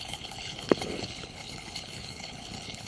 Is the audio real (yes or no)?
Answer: no